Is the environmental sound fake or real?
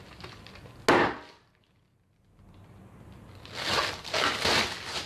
real